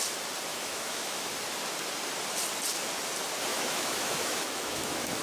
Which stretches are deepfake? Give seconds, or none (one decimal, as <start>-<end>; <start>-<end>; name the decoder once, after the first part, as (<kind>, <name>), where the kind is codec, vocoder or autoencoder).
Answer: 0.5-1.3 (autoencoder, DAC-VAE); 3.5-5.2